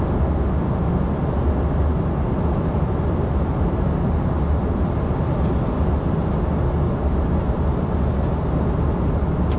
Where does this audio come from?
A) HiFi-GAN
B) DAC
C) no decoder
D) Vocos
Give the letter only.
C